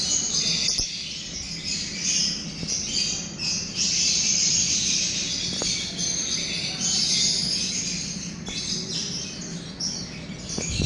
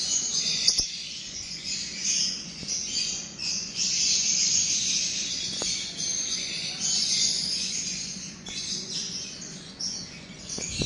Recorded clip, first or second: first